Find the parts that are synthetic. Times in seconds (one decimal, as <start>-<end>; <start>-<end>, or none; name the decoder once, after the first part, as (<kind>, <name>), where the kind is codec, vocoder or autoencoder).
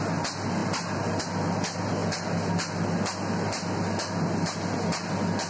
none